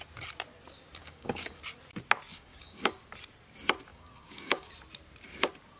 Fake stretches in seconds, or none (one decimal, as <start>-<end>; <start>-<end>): 1.0-1.6; 2.3-2.9; 3.9-4.7